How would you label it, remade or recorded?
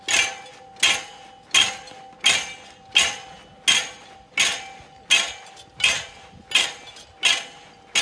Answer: recorded